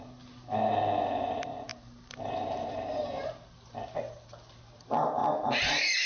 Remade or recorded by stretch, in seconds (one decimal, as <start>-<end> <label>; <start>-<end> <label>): 0.0-1.7 recorded; 1.7-3.3 remade; 3.3-6.1 recorded